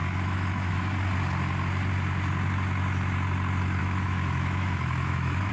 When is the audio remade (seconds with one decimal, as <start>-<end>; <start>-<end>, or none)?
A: 0.0-0.9; 3.8-5.5